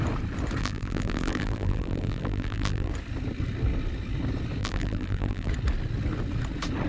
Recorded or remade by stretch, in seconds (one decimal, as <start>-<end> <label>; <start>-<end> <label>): 0.0-0.6 recorded; 0.6-2.9 remade; 2.9-4.6 recorded; 4.6-5.5 remade; 5.5-6.9 recorded